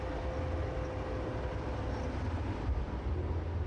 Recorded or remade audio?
recorded